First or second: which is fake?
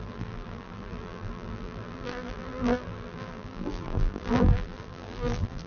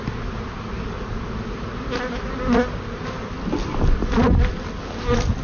first